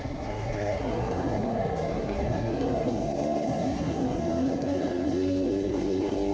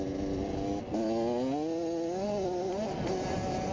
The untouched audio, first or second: second